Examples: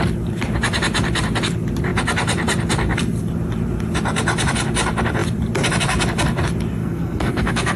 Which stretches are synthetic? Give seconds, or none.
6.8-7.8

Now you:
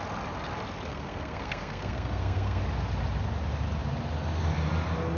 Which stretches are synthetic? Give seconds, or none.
0.9-2.6

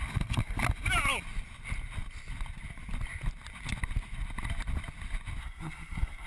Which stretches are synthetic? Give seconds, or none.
5.4-6.3